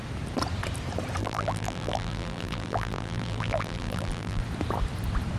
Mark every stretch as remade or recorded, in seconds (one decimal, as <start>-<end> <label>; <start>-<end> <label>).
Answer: 0.0-1.2 recorded; 1.2-4.4 remade; 4.4-5.4 recorded